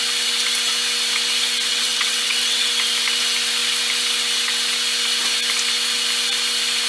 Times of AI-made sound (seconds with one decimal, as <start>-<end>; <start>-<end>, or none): 1.7-2.7